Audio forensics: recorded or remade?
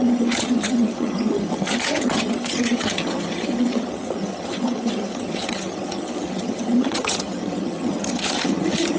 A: remade